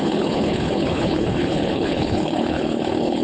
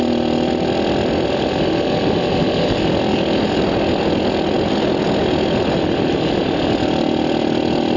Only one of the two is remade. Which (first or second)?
first